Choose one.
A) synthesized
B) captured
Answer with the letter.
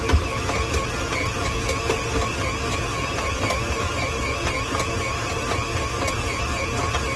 B